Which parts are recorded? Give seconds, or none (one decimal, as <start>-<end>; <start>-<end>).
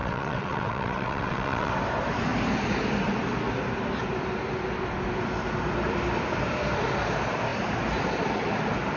1.7-9.0